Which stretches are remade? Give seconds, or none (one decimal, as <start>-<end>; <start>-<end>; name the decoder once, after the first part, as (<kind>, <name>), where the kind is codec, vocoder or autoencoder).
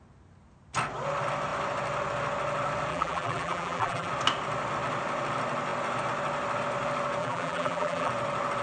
2.9-4.1 (vocoder, BigVGAN v2); 7.2-8.1